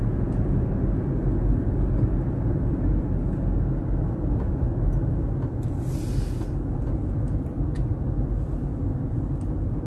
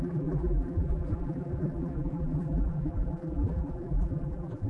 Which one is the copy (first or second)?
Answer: second